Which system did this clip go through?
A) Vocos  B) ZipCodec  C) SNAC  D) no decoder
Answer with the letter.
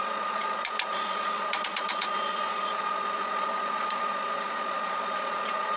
A